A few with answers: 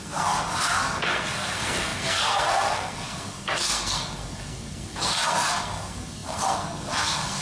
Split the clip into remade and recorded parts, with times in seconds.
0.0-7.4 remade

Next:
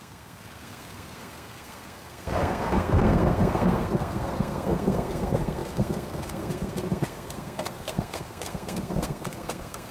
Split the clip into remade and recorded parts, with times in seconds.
0.0-9.9 remade

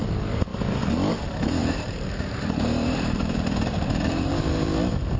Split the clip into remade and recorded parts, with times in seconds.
0.0-1.6 recorded; 1.6-4.7 remade; 4.7-5.2 recorded

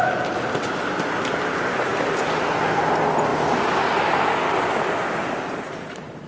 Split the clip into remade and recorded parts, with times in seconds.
0.0-6.3 recorded

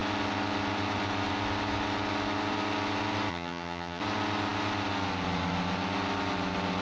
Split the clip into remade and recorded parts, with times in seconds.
0.0-3.3 recorded; 3.3-4.0 remade; 4.0-6.8 recorded

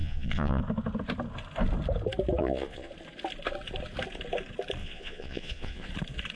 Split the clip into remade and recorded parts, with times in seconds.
0.0-0.6 remade; 0.6-2.4 recorded; 2.4-2.9 remade; 2.9-4.8 recorded; 4.8-5.9 remade; 5.9-6.4 recorded

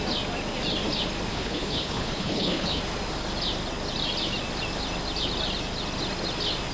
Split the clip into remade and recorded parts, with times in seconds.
0.0-1.3 recorded; 1.3-2.8 remade; 2.8-6.7 recorded

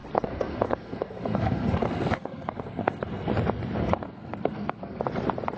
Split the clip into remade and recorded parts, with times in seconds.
0.0-3.3 remade; 3.3-3.8 recorded; 3.8-5.0 remade; 5.0-5.6 recorded